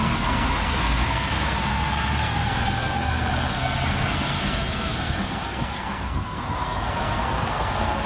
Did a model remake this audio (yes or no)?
yes